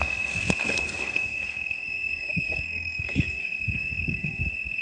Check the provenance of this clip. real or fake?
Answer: fake